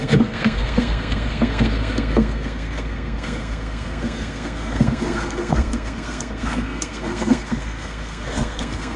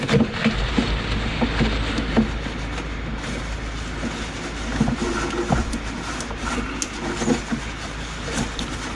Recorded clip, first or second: second